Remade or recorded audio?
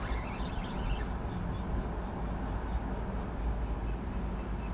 recorded